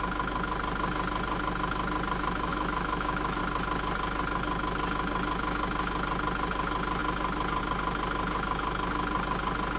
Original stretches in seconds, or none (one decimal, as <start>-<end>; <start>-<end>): 0.0-2.5; 3.4-9.8